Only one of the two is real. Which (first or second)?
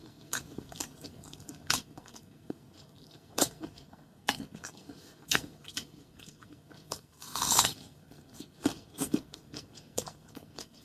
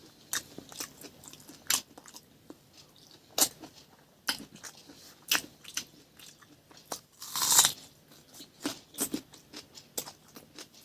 second